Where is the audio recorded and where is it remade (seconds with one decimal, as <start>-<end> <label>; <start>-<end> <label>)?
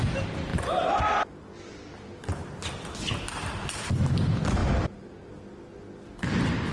0.0-6.7 recorded